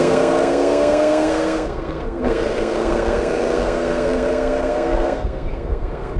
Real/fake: fake